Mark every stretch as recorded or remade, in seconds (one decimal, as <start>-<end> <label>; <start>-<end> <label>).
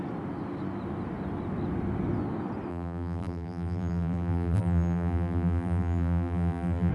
0.0-2.7 recorded; 2.7-6.9 remade